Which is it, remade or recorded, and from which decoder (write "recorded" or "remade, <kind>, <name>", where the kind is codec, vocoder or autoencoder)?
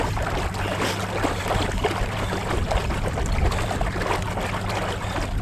recorded